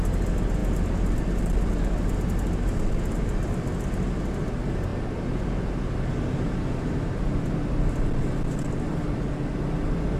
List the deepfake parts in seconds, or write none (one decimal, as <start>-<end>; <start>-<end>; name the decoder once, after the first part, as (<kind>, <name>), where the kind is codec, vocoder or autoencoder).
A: none